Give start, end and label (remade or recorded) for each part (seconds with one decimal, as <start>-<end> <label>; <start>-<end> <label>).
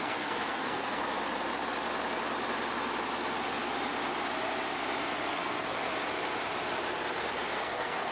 0.0-1.0 remade; 1.0-5.3 recorded; 5.3-5.9 remade; 5.9-7.2 recorded; 7.2-8.1 remade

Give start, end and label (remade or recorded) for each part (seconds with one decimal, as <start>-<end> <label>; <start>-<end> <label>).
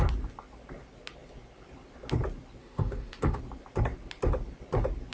0.0-2.6 recorded; 2.6-3.4 remade; 3.4-5.1 recorded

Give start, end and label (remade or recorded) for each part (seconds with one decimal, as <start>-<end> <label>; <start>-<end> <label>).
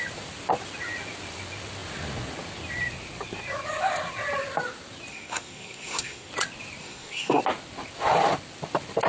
0.0-5.1 recorded; 5.1-6.3 remade; 6.3-6.8 recorded; 6.8-7.4 remade; 7.4-9.1 recorded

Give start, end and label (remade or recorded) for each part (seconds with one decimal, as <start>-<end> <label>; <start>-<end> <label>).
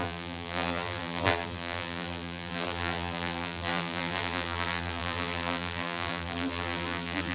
0.0-7.3 remade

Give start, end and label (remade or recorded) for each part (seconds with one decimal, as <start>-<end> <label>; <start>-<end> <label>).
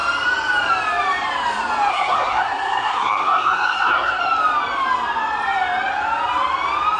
0.0-1.9 recorded; 1.9-4.2 remade; 4.2-7.0 recorded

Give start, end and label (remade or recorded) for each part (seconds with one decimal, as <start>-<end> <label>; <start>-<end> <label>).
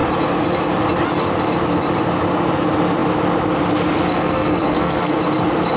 0.0-4.1 recorded; 4.1-5.1 remade; 5.1-5.8 recorded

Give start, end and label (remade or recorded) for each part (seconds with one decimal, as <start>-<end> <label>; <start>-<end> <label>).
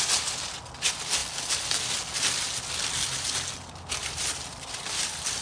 0.0-5.4 recorded